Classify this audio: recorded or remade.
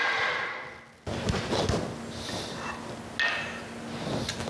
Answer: recorded